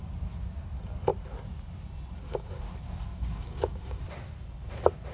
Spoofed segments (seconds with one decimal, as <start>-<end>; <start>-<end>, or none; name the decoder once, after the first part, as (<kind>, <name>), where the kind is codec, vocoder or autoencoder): 3.1-4.0 (codec, DAC)